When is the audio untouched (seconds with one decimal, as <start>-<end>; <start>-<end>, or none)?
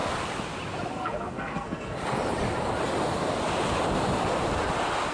0.0-0.9; 2.0-5.1